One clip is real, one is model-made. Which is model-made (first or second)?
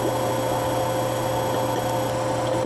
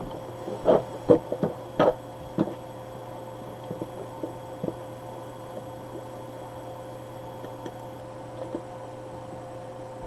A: second